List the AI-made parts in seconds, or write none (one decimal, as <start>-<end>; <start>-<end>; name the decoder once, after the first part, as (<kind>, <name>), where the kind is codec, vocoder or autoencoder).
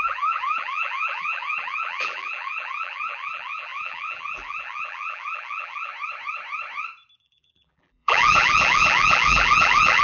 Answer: 0.0-5.9 (vocoder, BigVGAN v2); 7.2-10.0